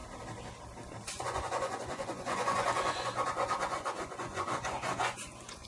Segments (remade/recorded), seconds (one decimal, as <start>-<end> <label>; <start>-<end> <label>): 0.0-1.1 recorded; 1.1-5.7 remade